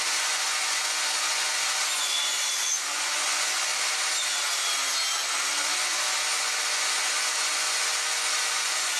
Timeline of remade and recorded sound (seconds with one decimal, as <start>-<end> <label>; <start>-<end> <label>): 0.0-3.7 remade; 3.7-5.6 recorded; 5.6-9.0 remade